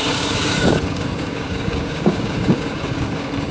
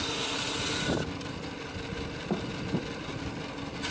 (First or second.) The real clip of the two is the second